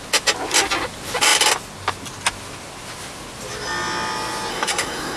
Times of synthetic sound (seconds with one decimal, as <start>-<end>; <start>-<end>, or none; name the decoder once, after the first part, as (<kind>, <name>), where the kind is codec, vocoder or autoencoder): 4.5-5.2 (codec, SNAC)